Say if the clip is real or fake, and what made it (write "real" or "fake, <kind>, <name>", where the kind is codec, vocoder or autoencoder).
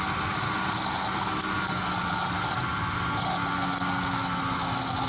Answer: real